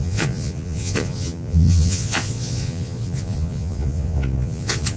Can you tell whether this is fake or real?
fake